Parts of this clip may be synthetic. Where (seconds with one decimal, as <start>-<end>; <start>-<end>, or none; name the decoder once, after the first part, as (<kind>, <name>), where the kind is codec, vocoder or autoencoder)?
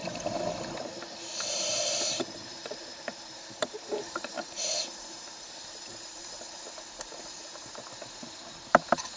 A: 1.5-9.2 (vocoder, BigVGAN v2)